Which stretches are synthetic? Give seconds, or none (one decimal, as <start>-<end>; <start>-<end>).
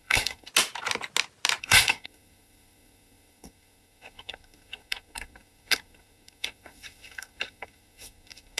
0.0-0.5; 1.6-8.6